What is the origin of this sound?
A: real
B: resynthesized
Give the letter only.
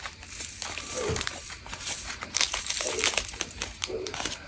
B